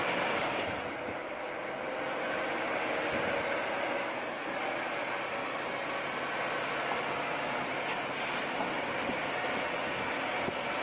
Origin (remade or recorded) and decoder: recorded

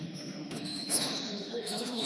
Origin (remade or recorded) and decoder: remade, autoencoder, DAC-VAE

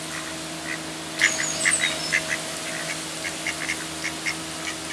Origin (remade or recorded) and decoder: recorded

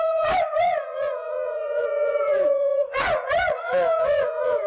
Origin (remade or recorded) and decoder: remade, vocoder, Vocos